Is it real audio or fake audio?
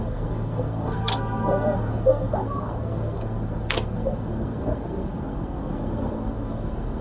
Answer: fake